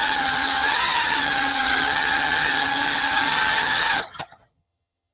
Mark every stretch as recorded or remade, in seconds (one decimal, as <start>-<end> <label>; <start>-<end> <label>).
0.0-5.1 remade